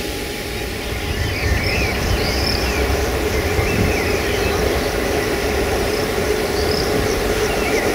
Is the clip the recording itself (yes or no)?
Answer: no